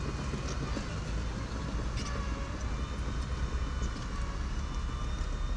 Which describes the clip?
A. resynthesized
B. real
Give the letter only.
B